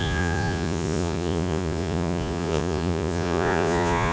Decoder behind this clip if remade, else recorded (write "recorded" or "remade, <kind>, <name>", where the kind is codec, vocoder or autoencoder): remade, vocoder, Vocos